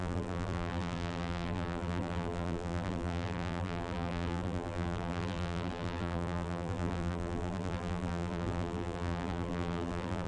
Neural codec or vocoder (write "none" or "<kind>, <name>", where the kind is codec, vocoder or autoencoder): vocoder, BigVGAN v2